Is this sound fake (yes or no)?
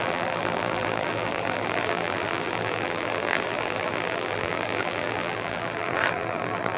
yes